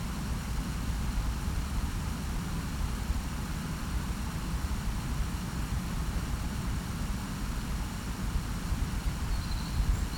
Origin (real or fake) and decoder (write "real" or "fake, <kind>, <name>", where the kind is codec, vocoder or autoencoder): real